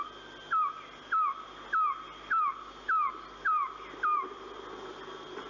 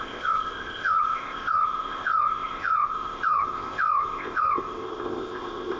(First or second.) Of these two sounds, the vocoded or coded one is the second